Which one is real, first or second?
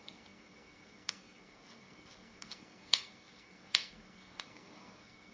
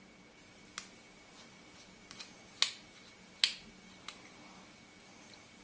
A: second